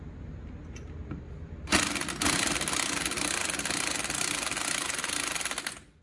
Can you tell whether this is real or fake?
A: real